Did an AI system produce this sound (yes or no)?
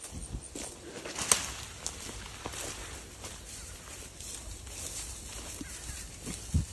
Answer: no